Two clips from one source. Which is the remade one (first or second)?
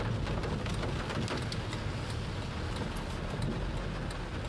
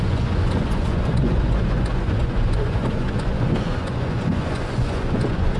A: second